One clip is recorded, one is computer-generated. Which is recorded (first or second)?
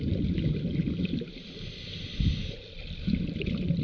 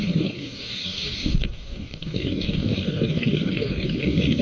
first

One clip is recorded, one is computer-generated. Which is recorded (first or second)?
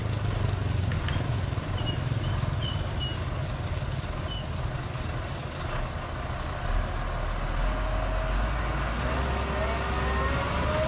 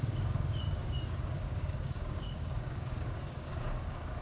first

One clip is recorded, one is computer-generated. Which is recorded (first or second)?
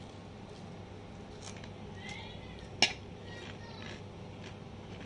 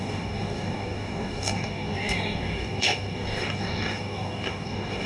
first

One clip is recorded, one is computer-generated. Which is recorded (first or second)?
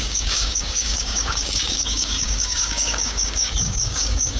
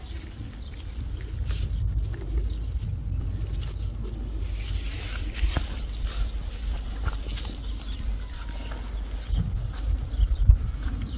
second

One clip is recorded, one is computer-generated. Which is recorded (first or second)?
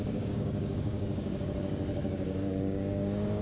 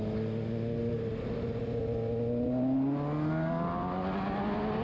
second